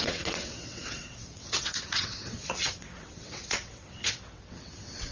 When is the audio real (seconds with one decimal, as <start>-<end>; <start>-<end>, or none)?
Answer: none